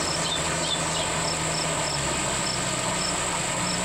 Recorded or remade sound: recorded